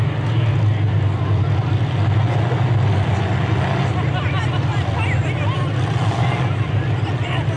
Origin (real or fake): real